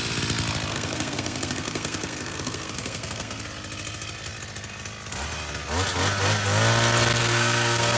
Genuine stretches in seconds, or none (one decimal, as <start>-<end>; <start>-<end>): 0.0-0.7; 3.4-7.2